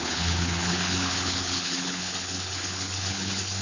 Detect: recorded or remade remade